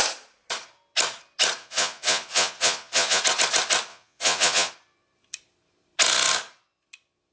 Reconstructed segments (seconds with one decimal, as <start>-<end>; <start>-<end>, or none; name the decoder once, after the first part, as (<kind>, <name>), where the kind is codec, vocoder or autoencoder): 1.6-3.2 (vocoder, Vocos); 3.9-4.7